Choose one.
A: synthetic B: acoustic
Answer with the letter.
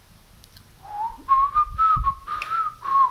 B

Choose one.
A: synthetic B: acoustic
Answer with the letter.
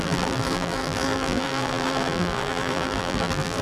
A